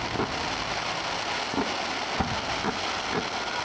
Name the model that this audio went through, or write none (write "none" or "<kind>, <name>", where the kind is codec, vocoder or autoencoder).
none